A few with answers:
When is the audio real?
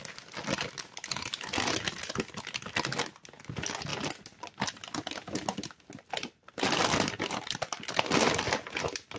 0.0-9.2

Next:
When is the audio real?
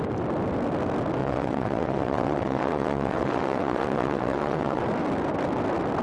0.0-1.2; 4.8-6.0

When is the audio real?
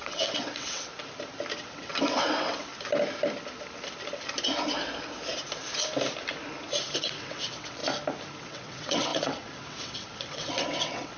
0.9-1.6; 2.7-7.0; 7.8-8.4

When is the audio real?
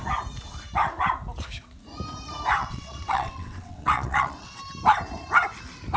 0.0-2.6; 4.6-6.0